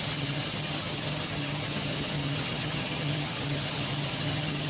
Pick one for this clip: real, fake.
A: fake